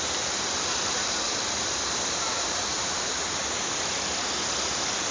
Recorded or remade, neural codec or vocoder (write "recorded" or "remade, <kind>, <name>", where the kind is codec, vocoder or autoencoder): recorded